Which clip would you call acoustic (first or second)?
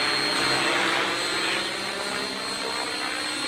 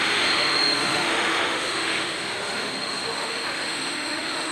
first